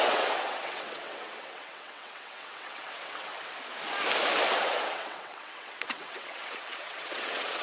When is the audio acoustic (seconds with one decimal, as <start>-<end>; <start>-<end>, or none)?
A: 3.3-4.6

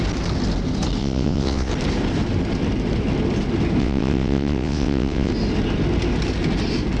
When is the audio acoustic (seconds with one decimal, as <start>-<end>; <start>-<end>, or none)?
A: 0.0-1.0; 1.7-3.8; 5.3-7.0

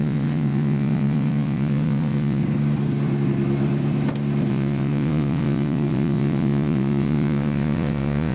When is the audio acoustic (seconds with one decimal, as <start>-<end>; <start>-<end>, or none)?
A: 2.4-4.5

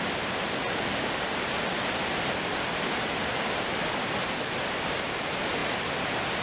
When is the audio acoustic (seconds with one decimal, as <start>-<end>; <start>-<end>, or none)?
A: 0.0-6.4

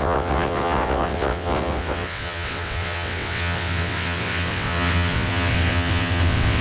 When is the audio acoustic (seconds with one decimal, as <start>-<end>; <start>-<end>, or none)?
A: none

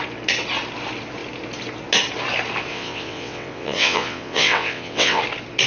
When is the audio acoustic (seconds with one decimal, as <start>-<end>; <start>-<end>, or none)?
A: 0.0-2.7; 5.2-5.7